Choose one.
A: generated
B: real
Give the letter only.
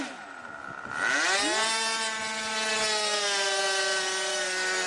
B